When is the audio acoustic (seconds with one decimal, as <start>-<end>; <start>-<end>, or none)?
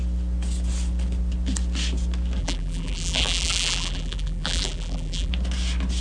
0.0-2.4; 5.3-6.0